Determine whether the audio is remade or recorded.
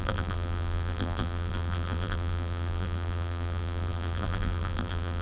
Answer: remade